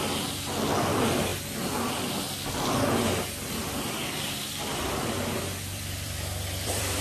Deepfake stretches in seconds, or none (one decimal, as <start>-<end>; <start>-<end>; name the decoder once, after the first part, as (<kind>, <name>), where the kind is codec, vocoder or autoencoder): 3.6-7.0 (vocoder, BigVGAN v2)